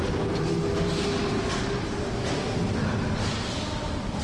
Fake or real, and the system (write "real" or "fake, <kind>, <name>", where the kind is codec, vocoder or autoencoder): real